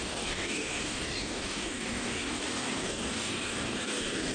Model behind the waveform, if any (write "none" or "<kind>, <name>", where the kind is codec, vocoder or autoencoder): codec, DAC